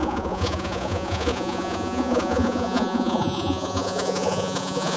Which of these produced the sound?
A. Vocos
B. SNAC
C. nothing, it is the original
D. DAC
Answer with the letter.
A